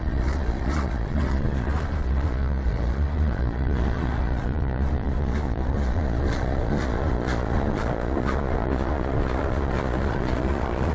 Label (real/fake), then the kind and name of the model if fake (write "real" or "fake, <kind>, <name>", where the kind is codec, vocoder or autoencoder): fake, vocoder, Vocos